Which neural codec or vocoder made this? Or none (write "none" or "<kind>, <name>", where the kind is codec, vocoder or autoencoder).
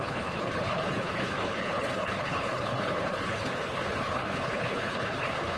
codec, HILCodec